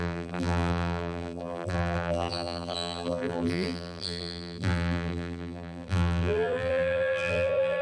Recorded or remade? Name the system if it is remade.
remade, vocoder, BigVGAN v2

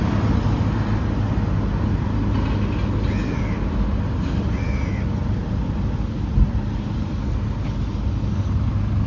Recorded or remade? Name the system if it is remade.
recorded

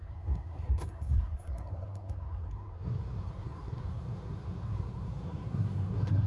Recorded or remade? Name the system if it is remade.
remade, codec, SNAC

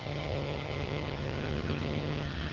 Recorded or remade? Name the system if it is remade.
remade, vocoder, HiFi-GAN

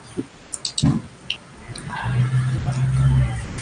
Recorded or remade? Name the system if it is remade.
recorded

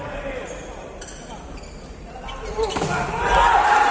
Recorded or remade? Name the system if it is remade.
recorded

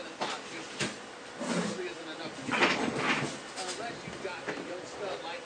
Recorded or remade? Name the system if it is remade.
recorded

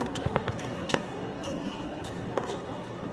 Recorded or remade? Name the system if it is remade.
remade, codec, SNAC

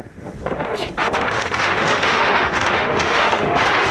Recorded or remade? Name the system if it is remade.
remade, autoencoder, DAC-VAE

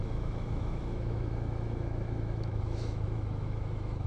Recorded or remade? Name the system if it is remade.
remade, autoencoder, DAC-VAE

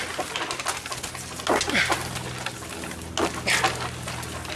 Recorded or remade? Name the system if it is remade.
recorded